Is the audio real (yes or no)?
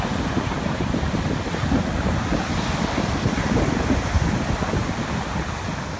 yes